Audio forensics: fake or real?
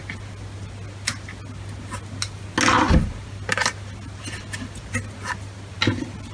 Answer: real